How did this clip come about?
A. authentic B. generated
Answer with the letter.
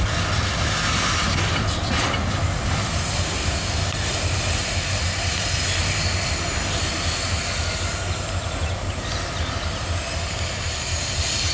A